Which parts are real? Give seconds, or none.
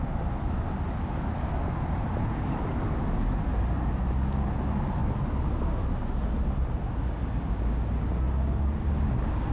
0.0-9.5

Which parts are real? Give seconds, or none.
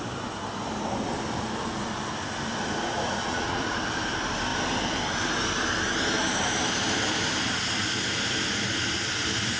0.0-3.2; 3.8-9.6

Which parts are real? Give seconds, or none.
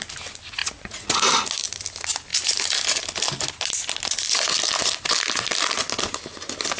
0.0-0.6; 1.3-6.8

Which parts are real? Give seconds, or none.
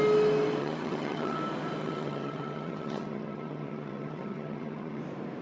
0.0-0.6; 1.4-1.8; 5.0-5.4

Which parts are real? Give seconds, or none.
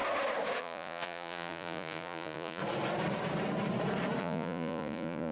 0.0-0.6; 2.6-4.2